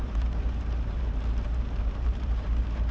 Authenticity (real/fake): fake